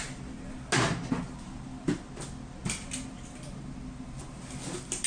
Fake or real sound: real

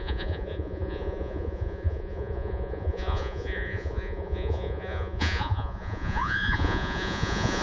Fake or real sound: fake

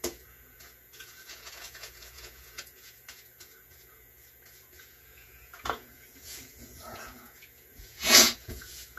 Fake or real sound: fake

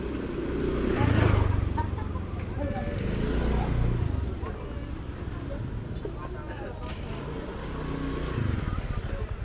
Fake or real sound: real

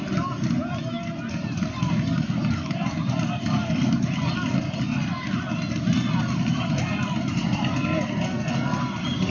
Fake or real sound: real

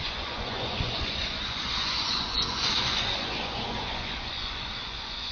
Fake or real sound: fake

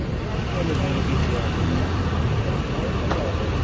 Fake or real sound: real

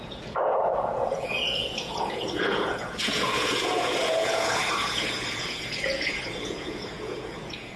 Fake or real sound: fake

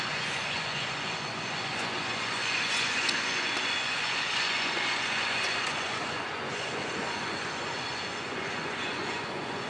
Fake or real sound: fake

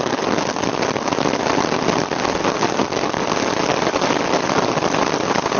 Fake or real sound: real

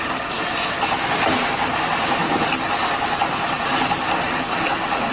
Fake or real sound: real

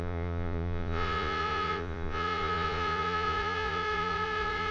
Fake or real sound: fake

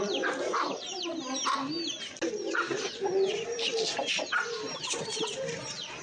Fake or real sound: real